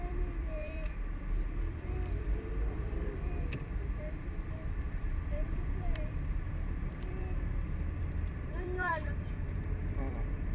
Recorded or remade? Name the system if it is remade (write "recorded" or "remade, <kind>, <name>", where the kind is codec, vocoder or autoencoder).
remade, vocoder, BigVGAN v2